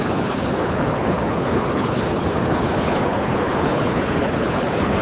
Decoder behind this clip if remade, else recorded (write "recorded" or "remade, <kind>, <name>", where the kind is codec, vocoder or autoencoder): remade, codec, HILCodec